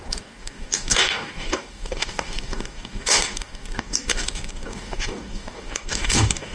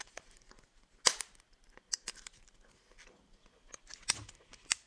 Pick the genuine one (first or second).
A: second